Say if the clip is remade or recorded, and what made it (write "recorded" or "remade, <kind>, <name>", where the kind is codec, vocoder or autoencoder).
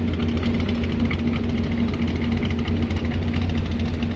recorded